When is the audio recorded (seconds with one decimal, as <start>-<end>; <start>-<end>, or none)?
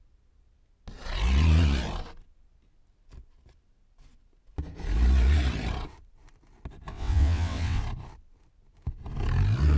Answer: 0.0-6.9; 7.8-9.8